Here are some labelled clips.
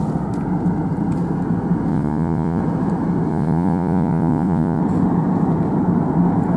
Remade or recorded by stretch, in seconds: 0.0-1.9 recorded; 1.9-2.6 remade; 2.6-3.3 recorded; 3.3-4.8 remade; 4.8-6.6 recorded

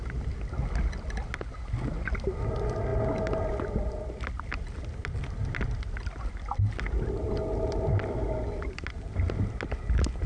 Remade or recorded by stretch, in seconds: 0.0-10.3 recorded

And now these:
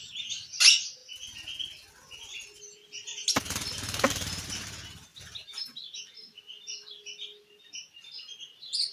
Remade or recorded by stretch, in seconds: 0.0-5.1 recorded; 5.1-8.2 remade; 8.2-8.9 recorded